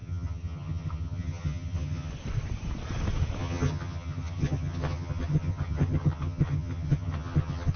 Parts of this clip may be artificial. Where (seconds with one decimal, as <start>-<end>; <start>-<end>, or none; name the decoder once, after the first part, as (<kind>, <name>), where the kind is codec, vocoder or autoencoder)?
0.0-2.1 (vocoder, HiFi-GAN); 3.4-7.8